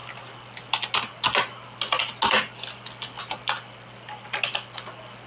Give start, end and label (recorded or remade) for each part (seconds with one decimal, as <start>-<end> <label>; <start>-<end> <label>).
0.0-5.3 recorded